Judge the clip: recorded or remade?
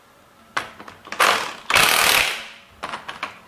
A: recorded